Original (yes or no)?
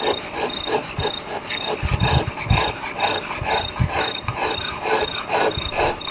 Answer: yes